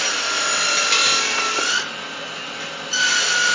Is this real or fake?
real